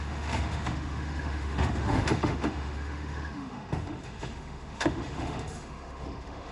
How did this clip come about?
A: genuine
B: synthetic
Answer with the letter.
B